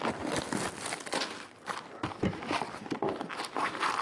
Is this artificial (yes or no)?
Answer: no